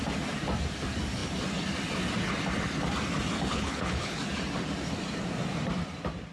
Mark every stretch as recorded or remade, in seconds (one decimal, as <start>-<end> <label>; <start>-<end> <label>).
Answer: 0.0-3.5 recorded; 3.5-4.2 remade; 4.2-6.3 recorded